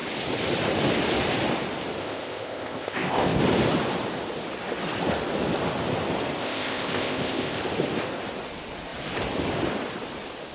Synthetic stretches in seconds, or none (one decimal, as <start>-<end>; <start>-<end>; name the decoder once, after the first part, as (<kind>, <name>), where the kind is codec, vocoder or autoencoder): 2.0-3.4 (codec, ZipCodec); 6.4-7.6